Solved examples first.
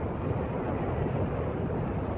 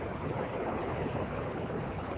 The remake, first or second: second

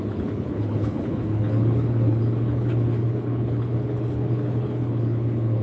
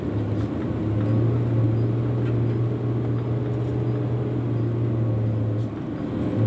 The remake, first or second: first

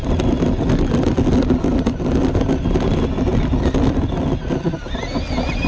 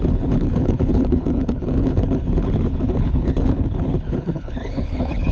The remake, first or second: second